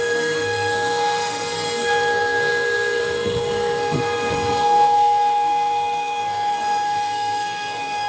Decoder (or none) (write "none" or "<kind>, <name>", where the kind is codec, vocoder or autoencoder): codec, SNAC